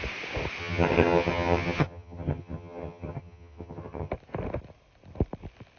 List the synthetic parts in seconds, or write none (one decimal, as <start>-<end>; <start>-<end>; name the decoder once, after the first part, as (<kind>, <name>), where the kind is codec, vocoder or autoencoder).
0.6-4.1 (vocoder, HiFi-GAN)